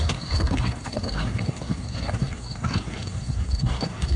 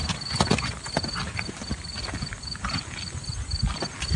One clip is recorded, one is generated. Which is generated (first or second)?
first